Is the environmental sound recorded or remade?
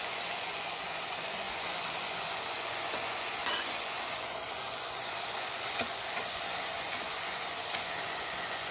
remade